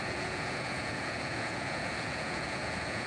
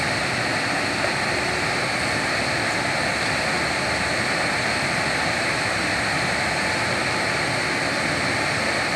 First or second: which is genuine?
second